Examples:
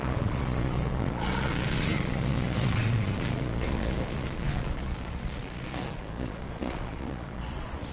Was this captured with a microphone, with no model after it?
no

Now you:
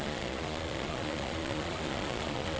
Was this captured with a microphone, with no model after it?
no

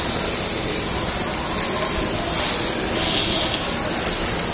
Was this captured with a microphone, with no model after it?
yes